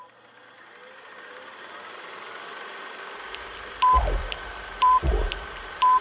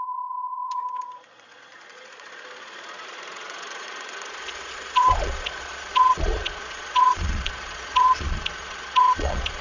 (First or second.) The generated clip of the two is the second